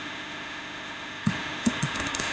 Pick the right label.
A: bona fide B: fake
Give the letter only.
B